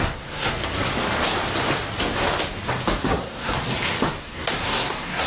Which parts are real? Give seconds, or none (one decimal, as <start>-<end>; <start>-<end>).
0.9-3.0; 3.5-4.2